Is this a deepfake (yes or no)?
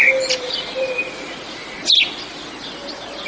no